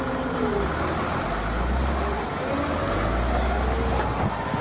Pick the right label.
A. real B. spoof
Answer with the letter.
A